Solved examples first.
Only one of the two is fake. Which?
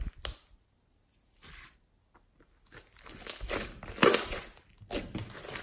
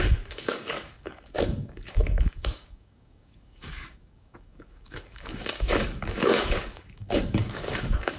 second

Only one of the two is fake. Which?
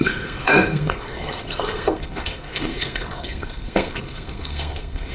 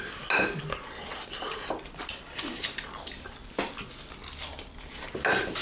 first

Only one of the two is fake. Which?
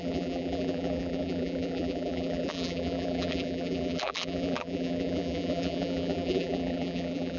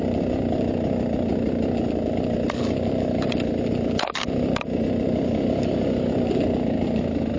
first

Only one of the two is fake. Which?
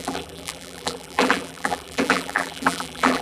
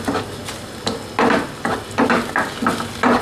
first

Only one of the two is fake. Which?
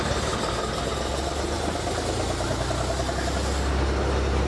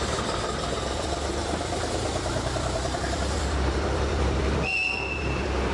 second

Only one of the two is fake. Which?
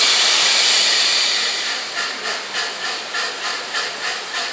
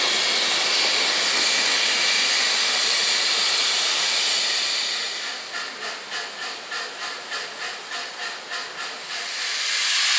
first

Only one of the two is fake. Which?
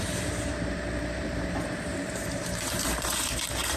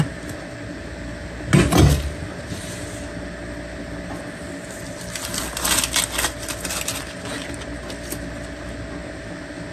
first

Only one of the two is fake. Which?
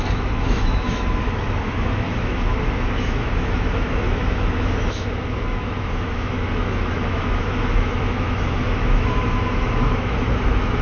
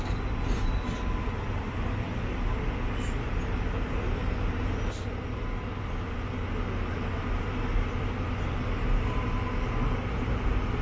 first